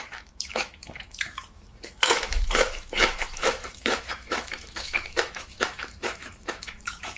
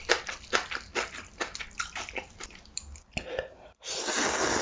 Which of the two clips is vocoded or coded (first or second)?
first